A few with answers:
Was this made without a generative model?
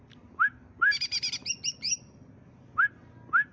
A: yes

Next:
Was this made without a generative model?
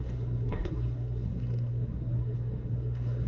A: no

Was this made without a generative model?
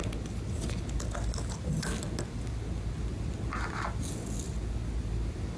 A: yes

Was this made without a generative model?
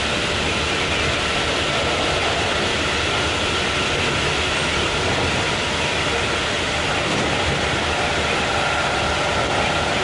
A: yes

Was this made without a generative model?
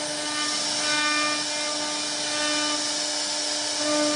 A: yes